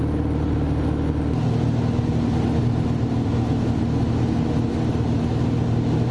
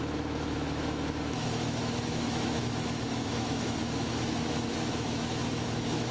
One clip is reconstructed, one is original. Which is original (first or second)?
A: first